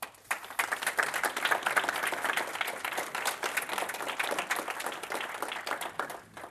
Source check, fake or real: real